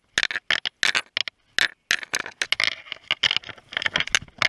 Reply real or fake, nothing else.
real